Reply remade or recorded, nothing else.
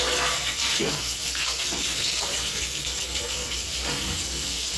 remade